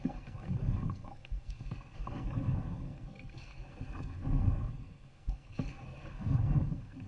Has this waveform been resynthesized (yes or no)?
yes